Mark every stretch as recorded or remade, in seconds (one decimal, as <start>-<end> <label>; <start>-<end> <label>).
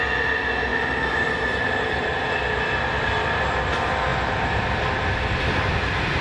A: 0.0-0.7 recorded; 0.7-2.6 remade; 2.6-4.1 recorded; 4.1-4.7 remade; 4.7-6.2 recorded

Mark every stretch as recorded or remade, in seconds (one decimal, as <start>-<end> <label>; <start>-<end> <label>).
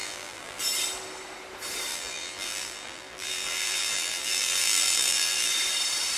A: 0.0-0.6 remade; 0.6-1.9 recorded; 1.9-5.5 remade; 5.5-6.2 recorded